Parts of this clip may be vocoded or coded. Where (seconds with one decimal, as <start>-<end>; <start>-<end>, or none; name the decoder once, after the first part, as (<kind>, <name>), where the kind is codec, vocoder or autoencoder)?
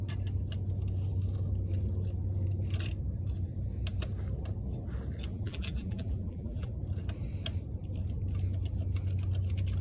5.3-6.7 (vocoder, BigVGAN v2)